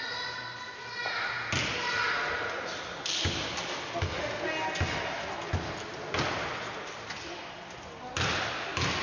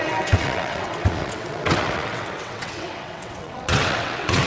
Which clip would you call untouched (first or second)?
first